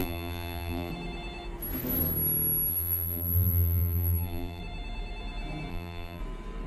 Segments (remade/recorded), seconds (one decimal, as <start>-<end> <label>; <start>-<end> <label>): 0.0-0.9 remade; 0.9-2.7 recorded; 2.7-4.6 remade; 4.6-5.7 recorded; 5.7-6.2 remade; 6.2-6.7 recorded